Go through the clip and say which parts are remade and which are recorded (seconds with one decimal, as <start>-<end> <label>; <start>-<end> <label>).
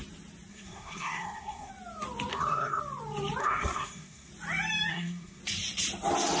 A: 0.0-0.5 recorded; 0.5-1.7 remade; 1.7-2.3 recorded; 2.3-2.8 remade; 2.8-3.4 recorded; 3.4-4.3 remade; 4.3-4.9 recorded; 4.9-5.4 remade; 5.4-6.4 recorded